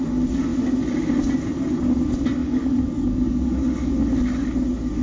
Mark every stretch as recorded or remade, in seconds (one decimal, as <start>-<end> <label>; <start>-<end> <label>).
0.0-2.4 recorded; 2.4-3.9 remade; 3.9-5.0 recorded

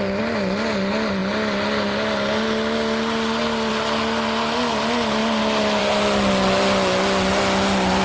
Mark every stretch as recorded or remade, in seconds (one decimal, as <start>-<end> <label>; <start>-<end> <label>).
0.0-8.0 recorded

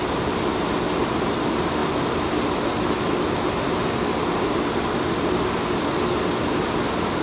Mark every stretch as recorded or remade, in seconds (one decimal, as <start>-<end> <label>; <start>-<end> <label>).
0.0-7.2 recorded

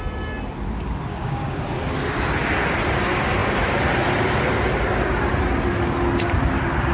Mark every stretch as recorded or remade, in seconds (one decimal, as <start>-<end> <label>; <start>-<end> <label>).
0.0-1.1 recorded; 1.1-1.6 remade; 1.6-6.9 recorded

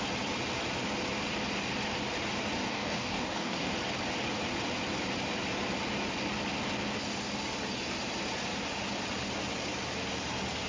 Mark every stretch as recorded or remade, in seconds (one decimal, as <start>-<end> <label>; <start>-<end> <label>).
0.0-2.6 recorded; 2.6-3.7 remade; 3.7-10.7 recorded

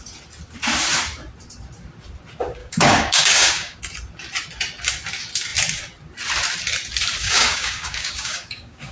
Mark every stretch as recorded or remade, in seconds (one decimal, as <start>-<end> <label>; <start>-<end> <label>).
0.0-2.6 recorded; 2.6-3.8 remade; 3.8-7.2 recorded; 7.2-8.9 remade

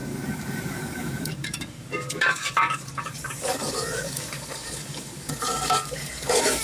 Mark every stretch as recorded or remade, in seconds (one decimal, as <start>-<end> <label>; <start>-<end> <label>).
0.0-6.6 remade

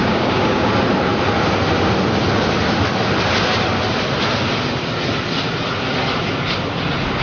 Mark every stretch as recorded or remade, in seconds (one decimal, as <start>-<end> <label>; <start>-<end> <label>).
0.0-0.7 remade; 0.7-7.2 recorded